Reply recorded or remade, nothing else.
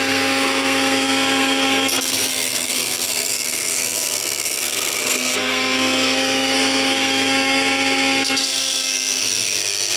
remade